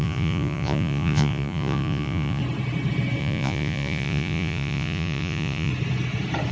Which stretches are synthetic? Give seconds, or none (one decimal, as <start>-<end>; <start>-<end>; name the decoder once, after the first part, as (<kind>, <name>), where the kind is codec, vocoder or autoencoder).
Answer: 0.0-2.4 (vocoder, Vocos); 3.2-5.7

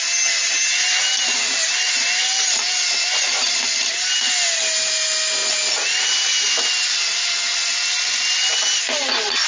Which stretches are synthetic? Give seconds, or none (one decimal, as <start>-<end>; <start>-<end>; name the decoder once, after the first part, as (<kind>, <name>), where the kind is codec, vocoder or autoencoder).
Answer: none

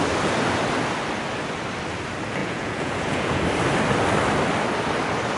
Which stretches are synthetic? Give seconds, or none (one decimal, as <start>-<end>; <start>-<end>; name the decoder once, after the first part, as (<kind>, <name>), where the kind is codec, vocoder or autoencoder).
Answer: 2.4-3.4 (vocoder, Vocos)

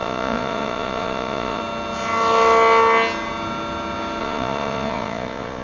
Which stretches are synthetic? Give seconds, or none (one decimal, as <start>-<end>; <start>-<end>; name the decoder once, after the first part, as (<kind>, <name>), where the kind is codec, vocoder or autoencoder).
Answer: 0.0-1.6 (vocoder, Vocos); 4.2-5.6

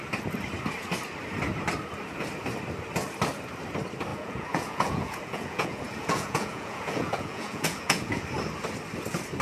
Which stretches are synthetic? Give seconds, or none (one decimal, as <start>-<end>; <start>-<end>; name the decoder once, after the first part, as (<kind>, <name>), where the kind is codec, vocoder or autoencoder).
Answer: 4.1-8.2 (vocoder, Vocos)